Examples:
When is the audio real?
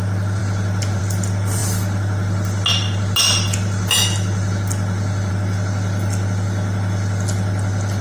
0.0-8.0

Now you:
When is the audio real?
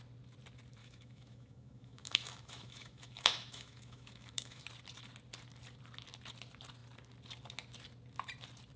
0.0-0.8; 4.6-8.8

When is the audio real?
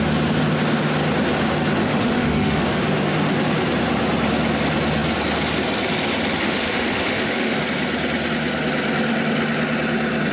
0.0-1.8; 2.6-6.4; 7.6-10.3